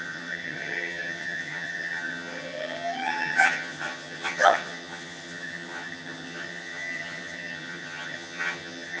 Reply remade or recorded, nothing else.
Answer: remade